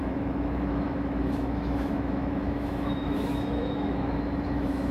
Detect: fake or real fake